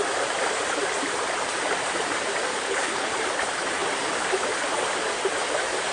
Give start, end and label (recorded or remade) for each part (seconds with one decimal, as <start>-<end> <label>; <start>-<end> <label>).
0.0-2.5 recorded; 2.5-3.1 remade; 3.1-5.9 recorded